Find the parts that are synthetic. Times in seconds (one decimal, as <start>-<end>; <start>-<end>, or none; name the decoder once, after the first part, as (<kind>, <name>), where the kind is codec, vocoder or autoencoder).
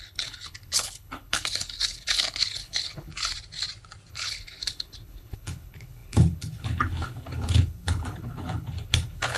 0.0-3.1 (codec, HILCodec); 4.1-9.4